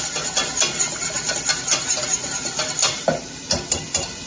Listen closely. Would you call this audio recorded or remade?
recorded